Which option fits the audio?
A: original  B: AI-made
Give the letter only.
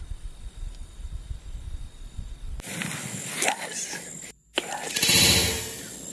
A